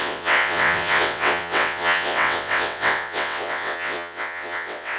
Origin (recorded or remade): remade